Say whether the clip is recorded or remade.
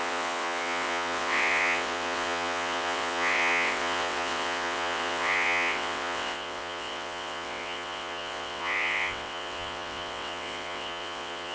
remade